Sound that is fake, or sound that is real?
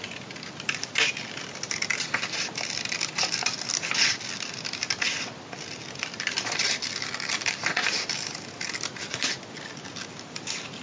real